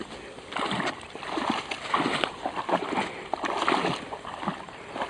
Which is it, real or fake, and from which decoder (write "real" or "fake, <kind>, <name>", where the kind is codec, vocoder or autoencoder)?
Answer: real